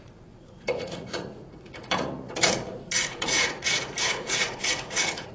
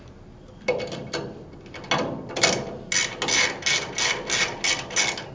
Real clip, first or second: second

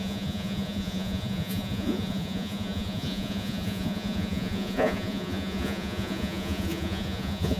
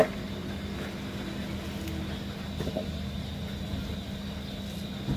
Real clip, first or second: second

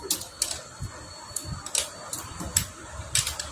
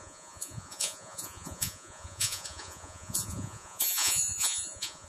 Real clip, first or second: first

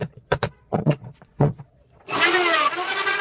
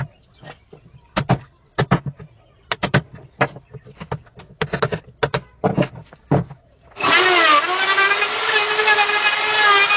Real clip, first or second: second